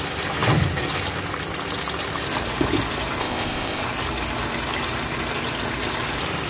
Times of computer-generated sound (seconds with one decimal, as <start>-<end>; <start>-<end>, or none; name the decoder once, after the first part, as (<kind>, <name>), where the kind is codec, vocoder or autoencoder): 3.2-3.8 (codec, ZipCodec)